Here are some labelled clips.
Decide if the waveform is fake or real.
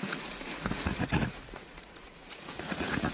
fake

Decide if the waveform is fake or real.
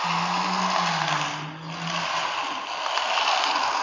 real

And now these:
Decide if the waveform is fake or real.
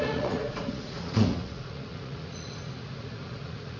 fake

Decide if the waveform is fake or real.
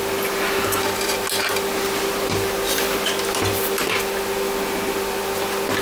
real